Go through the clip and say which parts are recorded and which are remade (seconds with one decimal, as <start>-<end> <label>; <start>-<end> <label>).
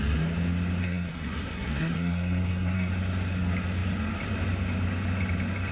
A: 0.0-0.8 recorded; 0.8-2.9 remade; 2.9-5.7 recorded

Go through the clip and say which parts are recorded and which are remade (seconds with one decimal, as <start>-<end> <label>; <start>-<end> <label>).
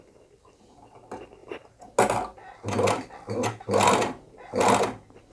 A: 0.0-5.3 recorded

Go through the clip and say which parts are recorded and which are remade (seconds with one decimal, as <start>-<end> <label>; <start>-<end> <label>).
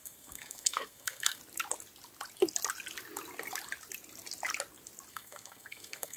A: 0.0-1.4 remade; 1.4-5.1 recorded; 5.1-6.2 remade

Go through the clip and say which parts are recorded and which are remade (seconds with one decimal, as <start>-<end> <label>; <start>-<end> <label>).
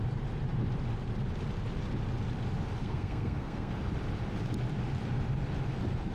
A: 0.0-2.8 recorded; 2.8-3.7 remade; 3.7-6.1 recorded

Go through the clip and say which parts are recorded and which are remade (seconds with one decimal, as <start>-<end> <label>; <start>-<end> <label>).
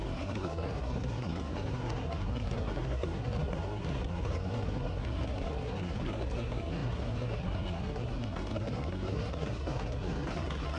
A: 0.0-10.8 remade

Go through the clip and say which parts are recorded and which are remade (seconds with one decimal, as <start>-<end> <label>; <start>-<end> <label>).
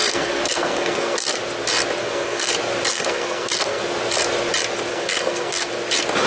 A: 0.0-1.4 remade; 1.4-2.0 recorded; 2.0-2.5 remade; 2.5-2.9 recorded; 2.9-3.8 remade; 3.8-4.9 recorded; 4.9-5.7 remade; 5.7-6.3 recorded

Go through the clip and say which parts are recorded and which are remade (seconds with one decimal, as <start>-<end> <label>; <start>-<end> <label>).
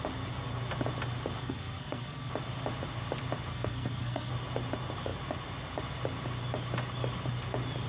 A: 0.0-1.4 recorded; 1.4-2.3 remade; 2.3-3.5 recorded; 3.5-4.3 remade; 4.3-7.9 recorded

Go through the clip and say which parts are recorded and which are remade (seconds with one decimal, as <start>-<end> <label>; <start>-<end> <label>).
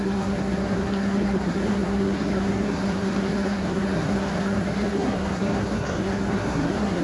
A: 0.0-7.0 remade